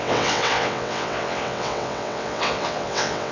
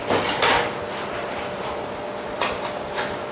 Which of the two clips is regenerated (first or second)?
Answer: first